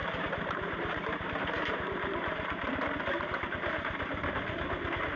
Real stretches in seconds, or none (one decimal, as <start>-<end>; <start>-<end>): 2.9-5.2